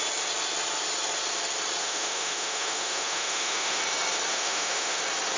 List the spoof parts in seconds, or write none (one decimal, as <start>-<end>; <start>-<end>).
1.8-3.8; 4.3-5.0

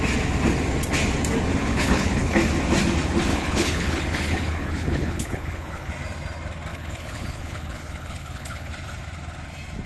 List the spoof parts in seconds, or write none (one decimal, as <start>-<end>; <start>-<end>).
1.6-2.4; 3.3-5.9; 6.7-8.7

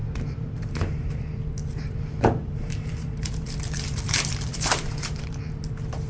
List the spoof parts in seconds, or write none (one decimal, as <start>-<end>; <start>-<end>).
0.0-1.1; 1.6-5.3